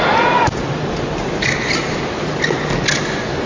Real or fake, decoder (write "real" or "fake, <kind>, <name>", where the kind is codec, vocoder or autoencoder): real